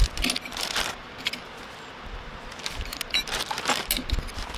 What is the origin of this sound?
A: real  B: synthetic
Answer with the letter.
A